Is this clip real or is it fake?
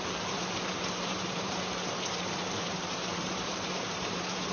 fake